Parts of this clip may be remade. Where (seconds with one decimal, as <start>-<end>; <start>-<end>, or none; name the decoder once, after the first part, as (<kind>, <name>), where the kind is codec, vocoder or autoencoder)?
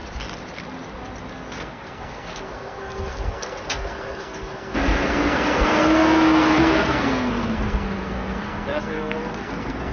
1.3-9.9 (codec, SNAC)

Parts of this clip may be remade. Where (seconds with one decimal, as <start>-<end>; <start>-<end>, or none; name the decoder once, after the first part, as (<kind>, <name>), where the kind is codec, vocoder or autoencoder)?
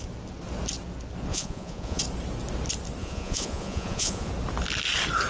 1.3-2.0 (vocoder, Vocos); 3.0-4.3